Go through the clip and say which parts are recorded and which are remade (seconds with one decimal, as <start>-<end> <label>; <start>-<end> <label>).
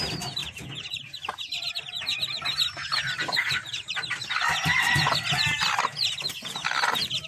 0.0-0.4 recorded; 0.4-1.6 remade; 1.6-7.3 recorded